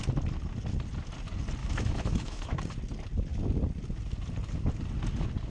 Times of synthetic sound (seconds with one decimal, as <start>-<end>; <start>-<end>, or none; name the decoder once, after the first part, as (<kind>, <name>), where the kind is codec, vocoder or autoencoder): 1.6-2.6 (autoencoder, DAC-VAE)